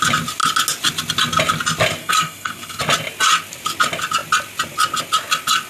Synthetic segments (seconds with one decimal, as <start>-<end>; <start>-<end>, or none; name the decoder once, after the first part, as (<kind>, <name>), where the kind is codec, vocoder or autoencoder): 2.0-2.8 (codec, SNAC)